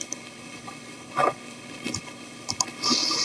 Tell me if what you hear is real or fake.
fake